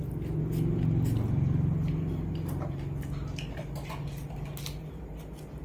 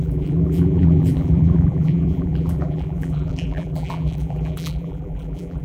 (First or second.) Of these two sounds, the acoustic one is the first